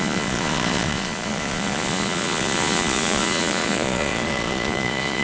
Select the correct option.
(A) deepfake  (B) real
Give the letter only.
A